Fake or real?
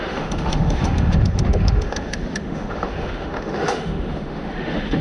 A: fake